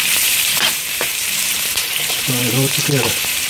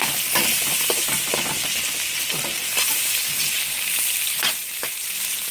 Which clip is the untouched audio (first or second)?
second